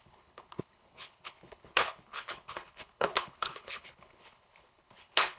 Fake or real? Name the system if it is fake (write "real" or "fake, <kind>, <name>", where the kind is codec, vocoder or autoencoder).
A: fake, codec, HILCodec